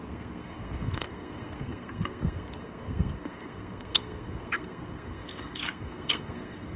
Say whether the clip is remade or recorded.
remade